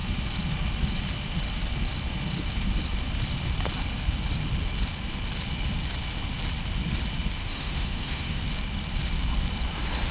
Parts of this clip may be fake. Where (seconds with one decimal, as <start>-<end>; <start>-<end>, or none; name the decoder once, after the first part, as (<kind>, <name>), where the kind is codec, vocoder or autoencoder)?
7.4-8.4 (autoencoder, DAC-VAE)